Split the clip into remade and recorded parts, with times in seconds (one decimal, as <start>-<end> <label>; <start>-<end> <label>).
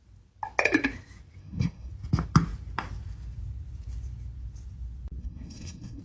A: 0.0-1.4 recorded; 1.4-1.9 remade; 1.9-5.2 recorded; 5.2-6.0 remade